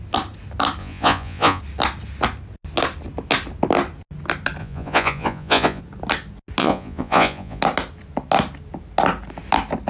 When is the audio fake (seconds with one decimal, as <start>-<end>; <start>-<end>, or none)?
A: 0.8-1.6; 4.6-5.8; 6.6-7.6